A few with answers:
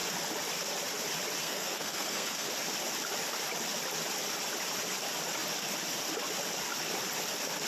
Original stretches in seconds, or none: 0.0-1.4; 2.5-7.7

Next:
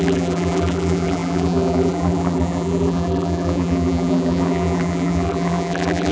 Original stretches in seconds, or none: none